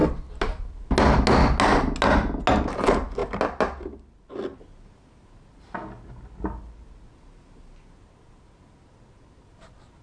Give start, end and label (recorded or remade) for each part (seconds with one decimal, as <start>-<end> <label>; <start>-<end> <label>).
0.0-10.0 recorded